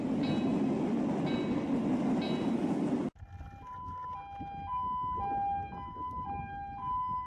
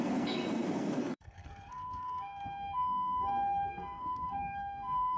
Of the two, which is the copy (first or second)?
second